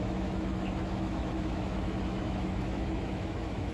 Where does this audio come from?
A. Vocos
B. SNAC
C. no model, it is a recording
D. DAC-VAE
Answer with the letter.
D